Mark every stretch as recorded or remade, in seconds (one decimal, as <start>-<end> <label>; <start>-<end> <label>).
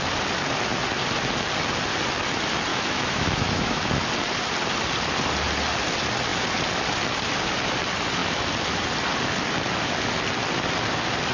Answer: 0.0-2.7 recorded; 2.7-3.9 remade; 3.9-11.3 recorded